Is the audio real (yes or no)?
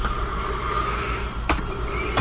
yes